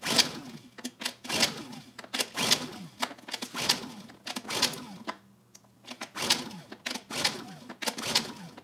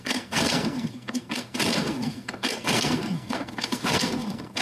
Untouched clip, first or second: first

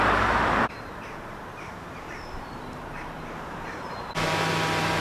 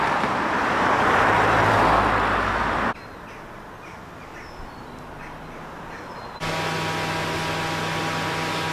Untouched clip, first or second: second